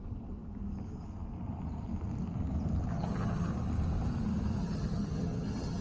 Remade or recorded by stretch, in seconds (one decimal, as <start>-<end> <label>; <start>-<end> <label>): 0.0-2.9 recorded; 2.9-3.5 remade; 3.5-4.6 recorded; 4.6-5.8 remade

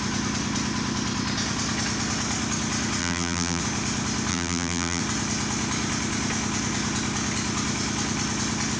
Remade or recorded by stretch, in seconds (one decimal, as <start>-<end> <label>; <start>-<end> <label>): 0.0-3.0 recorded; 3.0-3.6 remade; 3.6-4.3 recorded; 4.3-5.0 remade; 5.0-8.8 recorded

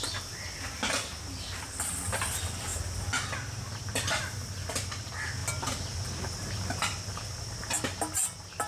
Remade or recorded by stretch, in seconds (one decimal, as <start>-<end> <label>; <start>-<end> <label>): 0.0-8.7 recorded

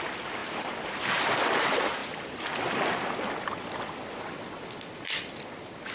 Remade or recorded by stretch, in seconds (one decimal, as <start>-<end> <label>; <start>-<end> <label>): 0.0-0.4 recorded; 0.4-1.0 remade; 1.0-5.9 recorded

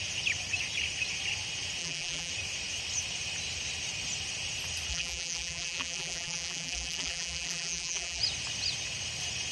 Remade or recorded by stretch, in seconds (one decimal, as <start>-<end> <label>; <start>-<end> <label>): 0.0-1.8 recorded; 1.8-2.3 remade; 2.3-4.9 recorded; 4.9-8.2 remade; 8.2-9.5 recorded

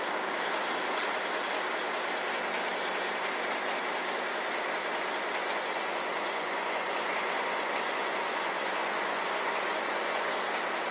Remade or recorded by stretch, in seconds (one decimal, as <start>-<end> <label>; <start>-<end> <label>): 0.0-5.4 recorded; 5.4-10.3 remade; 10.3-10.9 recorded

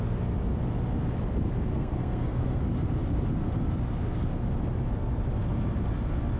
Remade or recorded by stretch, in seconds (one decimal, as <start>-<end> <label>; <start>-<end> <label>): 0.0-1.7 recorded; 1.7-2.6 remade; 2.6-6.4 recorded